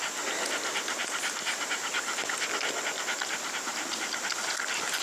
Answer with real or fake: real